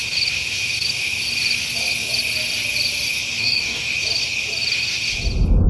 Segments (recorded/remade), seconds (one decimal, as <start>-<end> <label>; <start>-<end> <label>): 0.0-3.4 recorded; 3.4-3.8 remade; 3.8-5.7 recorded